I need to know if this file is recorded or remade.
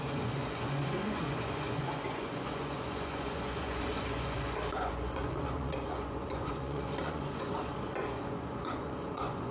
remade